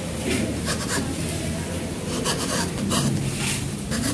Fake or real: real